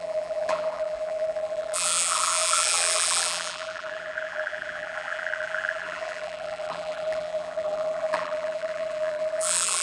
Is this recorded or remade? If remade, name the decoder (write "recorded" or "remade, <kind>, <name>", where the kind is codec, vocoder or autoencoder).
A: remade, vocoder, BigVGAN v2